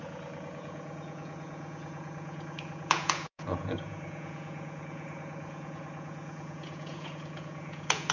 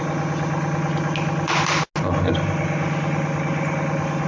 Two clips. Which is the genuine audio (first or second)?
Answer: second